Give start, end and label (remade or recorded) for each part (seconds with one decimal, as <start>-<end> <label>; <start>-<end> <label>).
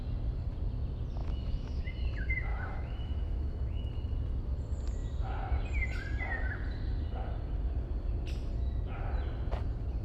0.0-1.2 recorded; 1.2-1.8 remade; 1.8-2.5 recorded; 2.5-3.9 remade; 3.9-10.0 recorded